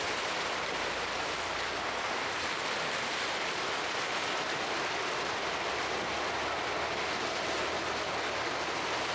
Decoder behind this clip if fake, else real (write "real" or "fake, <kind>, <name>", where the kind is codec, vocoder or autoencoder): real